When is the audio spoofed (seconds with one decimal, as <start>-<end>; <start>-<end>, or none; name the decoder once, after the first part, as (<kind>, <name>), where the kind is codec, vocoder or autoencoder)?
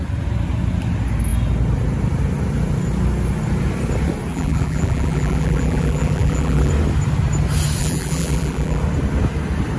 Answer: 4.3-6.7 (vocoder, BigVGAN v2); 7.8-8.8